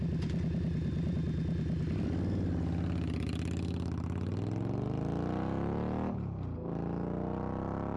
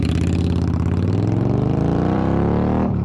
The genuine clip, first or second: first